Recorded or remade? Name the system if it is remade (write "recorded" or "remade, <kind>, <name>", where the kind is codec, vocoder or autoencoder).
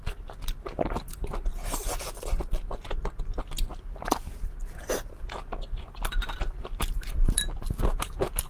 remade, vocoder, BigVGAN v2